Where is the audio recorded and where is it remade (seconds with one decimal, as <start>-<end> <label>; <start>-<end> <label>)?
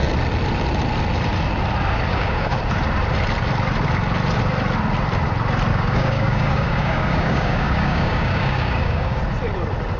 0.0-2.1 recorded; 2.1-2.6 remade; 2.6-5.7 recorded; 5.7-9.2 remade; 9.2-10.0 recorded